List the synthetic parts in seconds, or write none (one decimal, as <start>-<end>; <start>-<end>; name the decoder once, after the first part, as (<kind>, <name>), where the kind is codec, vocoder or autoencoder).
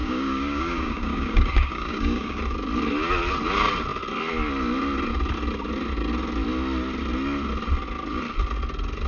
0.0-2.4 (codec, DAC)